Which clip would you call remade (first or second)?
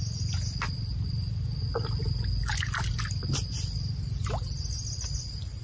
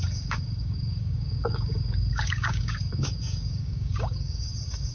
second